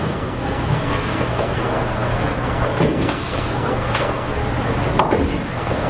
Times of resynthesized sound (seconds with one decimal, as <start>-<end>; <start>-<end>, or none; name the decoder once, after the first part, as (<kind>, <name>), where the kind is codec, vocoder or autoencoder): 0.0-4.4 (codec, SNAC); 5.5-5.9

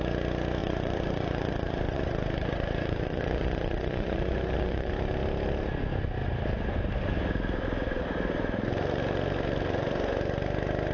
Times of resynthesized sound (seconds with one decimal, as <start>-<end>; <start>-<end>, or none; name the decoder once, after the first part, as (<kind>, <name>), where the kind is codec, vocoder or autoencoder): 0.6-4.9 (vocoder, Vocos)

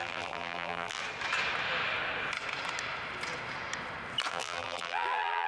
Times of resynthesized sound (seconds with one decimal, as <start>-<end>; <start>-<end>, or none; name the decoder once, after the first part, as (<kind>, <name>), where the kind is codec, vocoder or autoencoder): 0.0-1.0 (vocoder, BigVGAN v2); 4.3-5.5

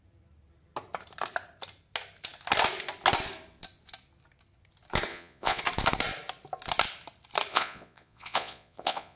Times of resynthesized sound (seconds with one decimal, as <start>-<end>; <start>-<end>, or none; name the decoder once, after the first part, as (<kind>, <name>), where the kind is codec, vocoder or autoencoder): 5.1-5.6 (vocoder, Vocos); 7.5-9.2